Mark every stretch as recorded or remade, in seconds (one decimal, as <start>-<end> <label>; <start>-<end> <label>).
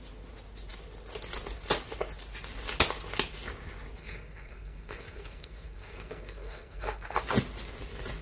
0.0-4.0 recorded; 4.0-7.2 remade; 7.2-8.2 recorded